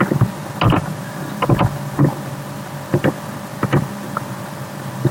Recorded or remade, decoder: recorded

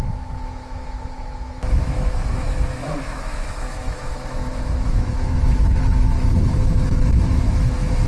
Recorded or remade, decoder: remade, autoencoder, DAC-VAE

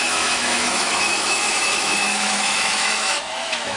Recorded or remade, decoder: remade, autoencoder, DAC-VAE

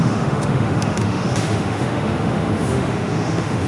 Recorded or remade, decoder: remade, autoencoder, DAC-VAE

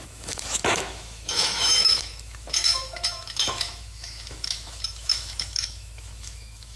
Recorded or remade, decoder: remade, autoencoder, DAC-VAE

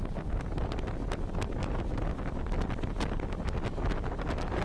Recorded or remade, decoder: recorded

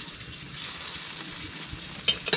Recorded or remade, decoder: recorded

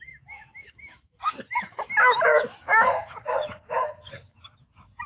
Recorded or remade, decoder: remade, autoencoder, DAC-VAE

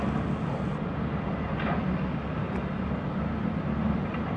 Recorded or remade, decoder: recorded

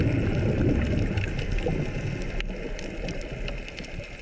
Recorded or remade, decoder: recorded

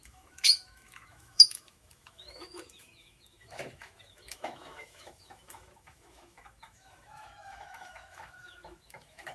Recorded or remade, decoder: remade, autoencoder, DAC-VAE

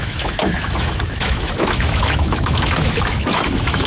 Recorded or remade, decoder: remade, autoencoder, DAC-VAE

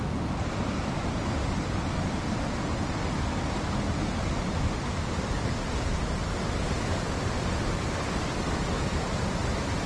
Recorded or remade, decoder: recorded